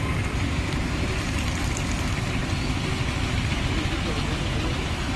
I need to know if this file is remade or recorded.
recorded